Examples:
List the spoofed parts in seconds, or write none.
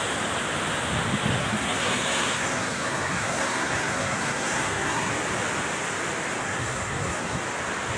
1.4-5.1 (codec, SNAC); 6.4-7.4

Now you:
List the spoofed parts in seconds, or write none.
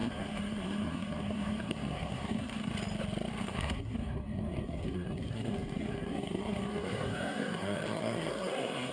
0.0-2.7 (codec, SNAC); 3.4-8.9